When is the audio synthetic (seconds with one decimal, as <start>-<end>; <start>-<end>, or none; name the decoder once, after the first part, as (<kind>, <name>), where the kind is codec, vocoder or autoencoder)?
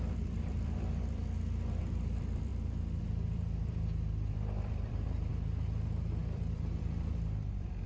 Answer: 0.0-1.2 (vocoder, BigVGAN v2); 1.8-2.5; 3.0-5.3; 6.2-7.9